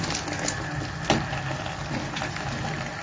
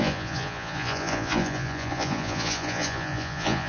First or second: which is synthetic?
second